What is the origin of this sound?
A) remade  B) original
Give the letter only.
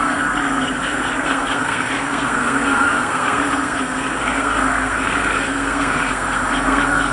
A